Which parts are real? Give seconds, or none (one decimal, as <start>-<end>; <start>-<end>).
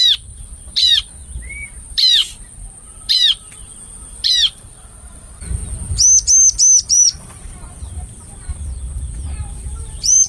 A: 5.6-6.9